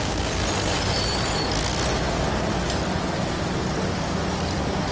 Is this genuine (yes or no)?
yes